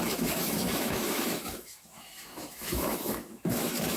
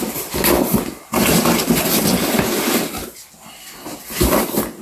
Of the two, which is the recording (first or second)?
second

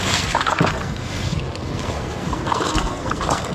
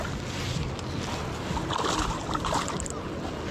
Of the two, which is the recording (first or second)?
second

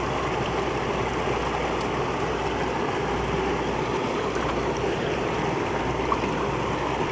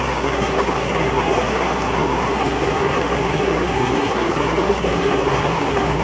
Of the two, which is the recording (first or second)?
first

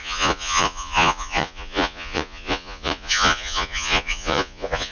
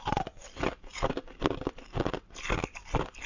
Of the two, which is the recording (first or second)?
second